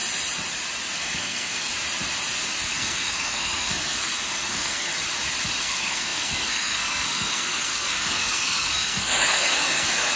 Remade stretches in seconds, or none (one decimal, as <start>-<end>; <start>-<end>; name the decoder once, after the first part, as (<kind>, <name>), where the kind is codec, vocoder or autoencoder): 1.0-1.7 (codec, SNAC); 2.7-4.9; 5.6-10.2